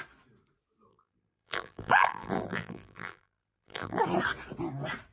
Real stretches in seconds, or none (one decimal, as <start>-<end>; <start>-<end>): 0.0-0.9; 4.0-5.1